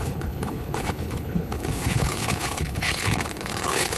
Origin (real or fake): fake